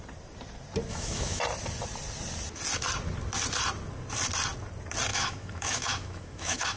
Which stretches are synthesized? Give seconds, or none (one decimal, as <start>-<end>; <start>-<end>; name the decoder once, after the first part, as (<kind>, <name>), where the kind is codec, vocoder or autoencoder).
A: 0.9-1.4 (autoencoder, DAC-VAE); 5.1-6.8